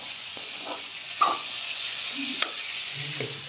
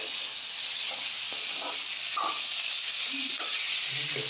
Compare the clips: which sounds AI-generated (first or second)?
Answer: first